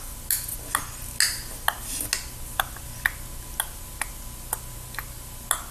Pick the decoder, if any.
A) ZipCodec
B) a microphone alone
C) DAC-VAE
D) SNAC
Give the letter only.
B